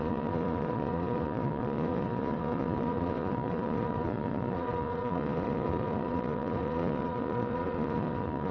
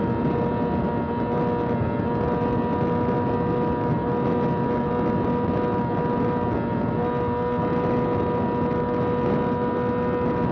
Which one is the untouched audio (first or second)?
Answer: second